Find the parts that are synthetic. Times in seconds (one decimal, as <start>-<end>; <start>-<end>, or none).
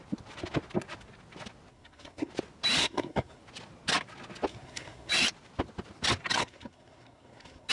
1.7-2.3; 2.8-3.4; 4.5-5.1; 6.4-7.7